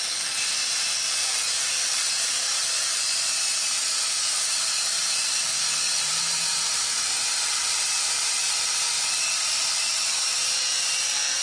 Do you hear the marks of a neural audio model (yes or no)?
yes